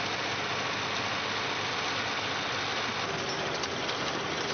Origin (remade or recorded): recorded